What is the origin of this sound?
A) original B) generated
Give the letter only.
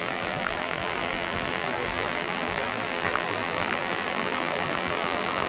B